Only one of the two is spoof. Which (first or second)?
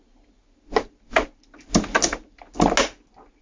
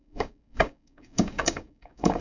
second